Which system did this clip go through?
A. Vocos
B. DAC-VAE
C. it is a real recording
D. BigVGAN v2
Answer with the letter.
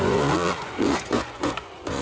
A